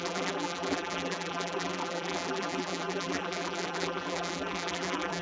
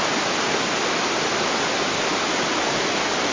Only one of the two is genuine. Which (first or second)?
second